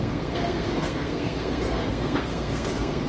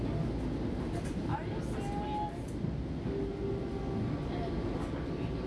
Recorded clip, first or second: second